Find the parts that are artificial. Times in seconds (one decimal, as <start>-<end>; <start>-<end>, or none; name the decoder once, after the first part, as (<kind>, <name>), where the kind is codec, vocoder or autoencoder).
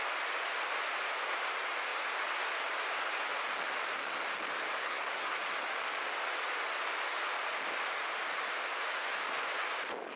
4.8-5.4 (codec, SNAC)